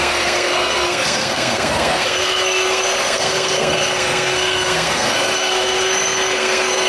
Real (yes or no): no